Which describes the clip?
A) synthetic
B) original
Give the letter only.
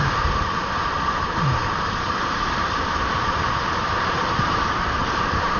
A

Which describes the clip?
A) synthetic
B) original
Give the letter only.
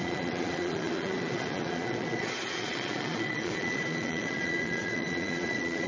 A